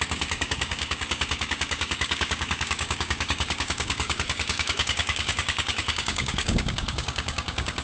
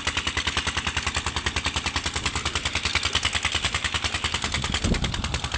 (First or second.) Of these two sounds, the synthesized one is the first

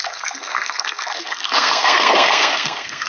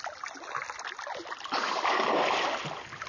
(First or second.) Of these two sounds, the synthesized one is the first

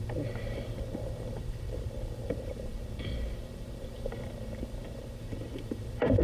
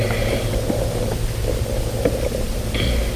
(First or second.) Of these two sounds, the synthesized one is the first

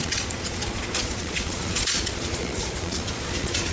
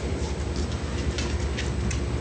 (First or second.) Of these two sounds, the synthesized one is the first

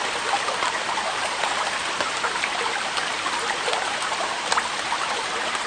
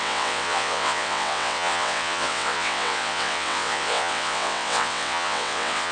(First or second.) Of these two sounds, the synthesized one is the second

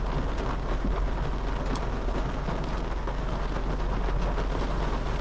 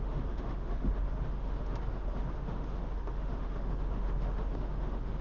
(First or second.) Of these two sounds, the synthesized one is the second